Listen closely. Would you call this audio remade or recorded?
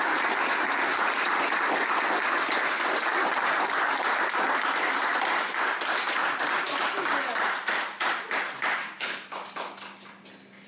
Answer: recorded